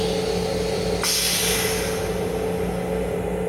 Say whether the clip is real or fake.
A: real